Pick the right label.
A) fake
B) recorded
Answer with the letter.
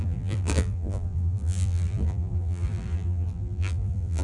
A